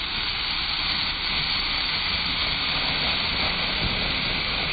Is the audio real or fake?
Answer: real